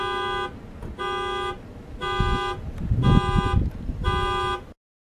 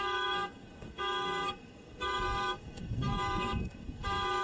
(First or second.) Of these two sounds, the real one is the first